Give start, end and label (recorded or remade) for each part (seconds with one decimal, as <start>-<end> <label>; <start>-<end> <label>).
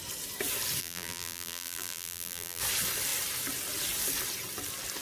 0.0-0.8 recorded; 0.8-2.6 remade; 2.6-5.0 recorded